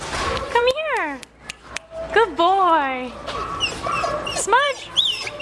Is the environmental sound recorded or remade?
remade